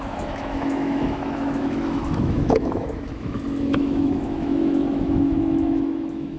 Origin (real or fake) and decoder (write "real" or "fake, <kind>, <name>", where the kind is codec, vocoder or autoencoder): fake, autoencoder, DAC-VAE